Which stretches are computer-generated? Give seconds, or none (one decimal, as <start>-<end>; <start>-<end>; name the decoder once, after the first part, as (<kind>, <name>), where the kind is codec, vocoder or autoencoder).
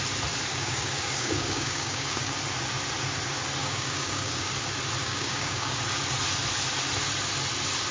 0.5-2.3 (codec, DAC); 3.6-4.5; 5.0-5.8